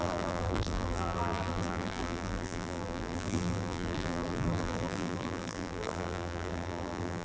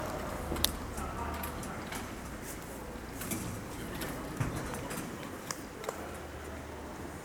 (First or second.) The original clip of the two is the second